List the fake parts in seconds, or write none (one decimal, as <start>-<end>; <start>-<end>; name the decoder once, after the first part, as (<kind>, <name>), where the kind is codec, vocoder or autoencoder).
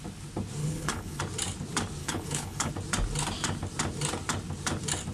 0.6-1.2 (codec, HILCodec); 2.0-2.7